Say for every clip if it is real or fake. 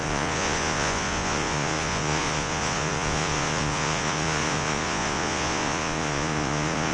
fake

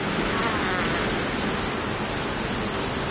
real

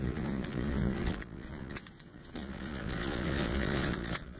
fake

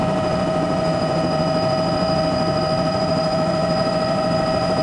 fake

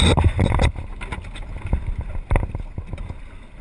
real